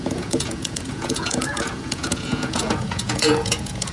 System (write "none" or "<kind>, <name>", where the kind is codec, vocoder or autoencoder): vocoder, Vocos